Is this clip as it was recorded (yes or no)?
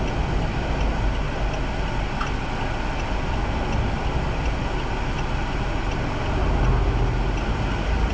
yes